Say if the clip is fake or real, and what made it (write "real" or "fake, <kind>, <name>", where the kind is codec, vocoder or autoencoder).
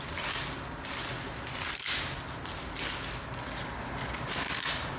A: real